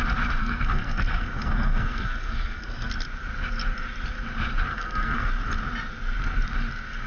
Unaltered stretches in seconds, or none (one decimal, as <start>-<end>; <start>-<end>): 0.0-0.4; 2.9-4.7; 5.3-7.1